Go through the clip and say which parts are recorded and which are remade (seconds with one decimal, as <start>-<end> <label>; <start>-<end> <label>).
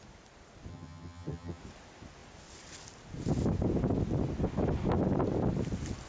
0.0-0.7 recorded; 0.7-1.6 remade; 1.6-6.1 recorded